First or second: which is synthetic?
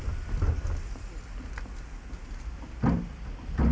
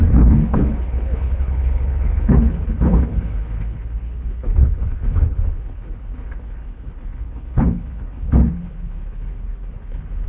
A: second